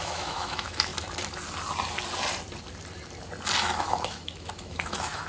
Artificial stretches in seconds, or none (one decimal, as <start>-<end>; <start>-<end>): 0.0-0.9; 3.6-5.3